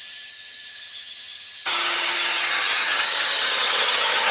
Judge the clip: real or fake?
fake